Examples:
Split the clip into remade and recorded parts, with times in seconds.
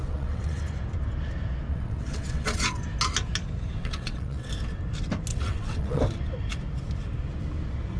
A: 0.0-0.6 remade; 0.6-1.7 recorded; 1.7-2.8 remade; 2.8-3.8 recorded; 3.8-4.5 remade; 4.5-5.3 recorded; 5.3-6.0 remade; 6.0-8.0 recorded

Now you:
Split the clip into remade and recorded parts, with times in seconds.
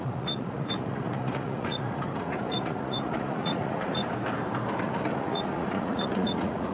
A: 0.0-4.0 remade; 4.0-4.8 recorded; 4.8-6.7 remade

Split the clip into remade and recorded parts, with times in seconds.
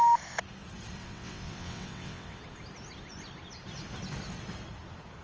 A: 0.0-1.0 recorded; 1.0-2.4 remade; 2.4-5.2 recorded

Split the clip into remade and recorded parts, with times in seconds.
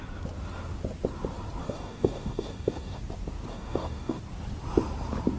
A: 0.0-1.6 recorded; 1.6-3.0 remade; 3.0-3.5 recorded; 3.5-4.2 remade; 4.2-5.4 recorded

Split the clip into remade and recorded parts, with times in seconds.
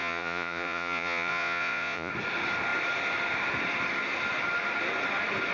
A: 0.0-2.1 remade; 2.1-5.5 recorded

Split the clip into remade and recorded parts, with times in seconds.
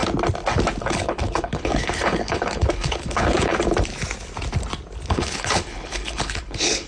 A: 0.0-0.8 recorded; 0.8-3.5 remade; 3.5-5.1 recorded; 5.1-6.9 remade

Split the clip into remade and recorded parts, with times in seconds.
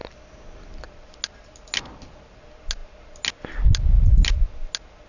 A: 0.0-5.1 recorded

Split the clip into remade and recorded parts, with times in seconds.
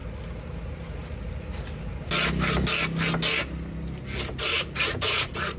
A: 0.0-4.5 recorded; 4.5-5.6 remade